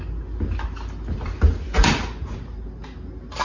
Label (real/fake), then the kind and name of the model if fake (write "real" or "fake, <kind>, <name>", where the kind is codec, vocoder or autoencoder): real